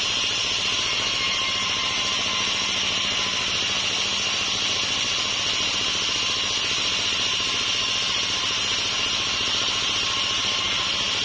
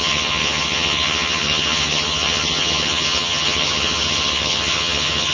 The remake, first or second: second